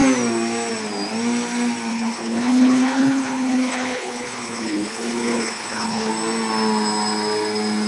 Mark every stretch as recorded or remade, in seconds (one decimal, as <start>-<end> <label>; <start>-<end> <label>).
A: 0.0-1.9 recorded; 1.9-6.1 remade; 6.1-7.9 recorded